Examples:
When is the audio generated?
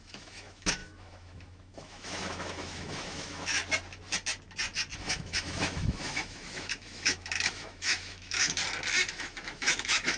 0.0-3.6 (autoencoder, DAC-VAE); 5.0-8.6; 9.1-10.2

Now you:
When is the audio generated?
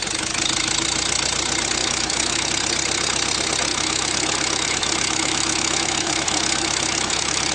1.8-2.5 (autoencoder, DAC-VAE); 3.7-7.5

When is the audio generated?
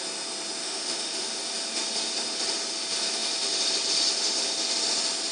0.6-1.3 (autoencoder, DAC-VAE)